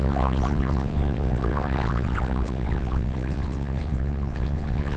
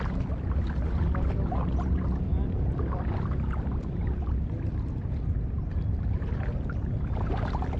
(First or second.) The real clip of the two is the second